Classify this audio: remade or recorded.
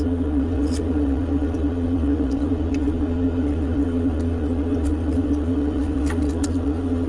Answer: remade